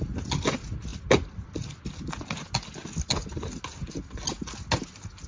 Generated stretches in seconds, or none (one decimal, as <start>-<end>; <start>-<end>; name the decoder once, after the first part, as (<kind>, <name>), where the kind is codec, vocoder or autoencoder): none

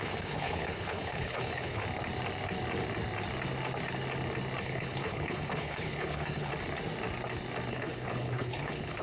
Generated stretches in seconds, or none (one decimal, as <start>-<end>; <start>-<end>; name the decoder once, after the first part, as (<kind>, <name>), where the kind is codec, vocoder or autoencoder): 0.0-1.8 (codec, HILCodec); 4.6-6.5; 7.7-9.0

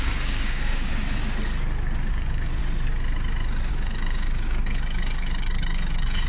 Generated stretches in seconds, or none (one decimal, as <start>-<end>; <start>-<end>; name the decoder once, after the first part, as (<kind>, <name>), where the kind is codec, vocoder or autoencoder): 0.0-0.9 (codec, DAC); 2.1-2.6; 3.7-6.3

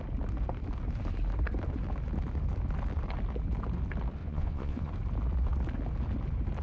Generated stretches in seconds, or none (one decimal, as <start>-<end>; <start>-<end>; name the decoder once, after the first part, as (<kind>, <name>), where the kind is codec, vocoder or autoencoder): 4.2-4.9 (vocoder, Vocos)

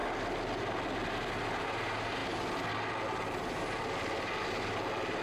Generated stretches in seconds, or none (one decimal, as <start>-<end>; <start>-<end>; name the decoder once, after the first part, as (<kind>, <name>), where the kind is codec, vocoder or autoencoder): none

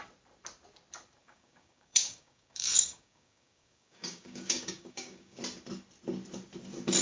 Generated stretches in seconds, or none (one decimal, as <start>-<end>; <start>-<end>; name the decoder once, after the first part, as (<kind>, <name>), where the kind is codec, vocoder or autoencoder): 1.2-5.4 (codec, DAC)